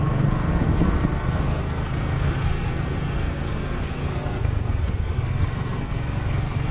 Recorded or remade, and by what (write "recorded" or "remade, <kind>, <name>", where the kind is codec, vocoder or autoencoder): remade, codec, SNAC